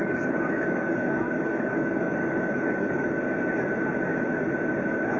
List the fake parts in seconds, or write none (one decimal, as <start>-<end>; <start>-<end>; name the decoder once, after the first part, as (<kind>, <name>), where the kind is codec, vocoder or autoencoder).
0.0-3.1 (codec, DAC)